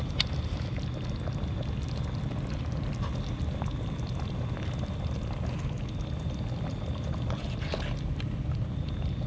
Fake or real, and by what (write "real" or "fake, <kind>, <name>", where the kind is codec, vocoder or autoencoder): real